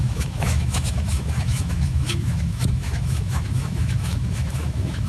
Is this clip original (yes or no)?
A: no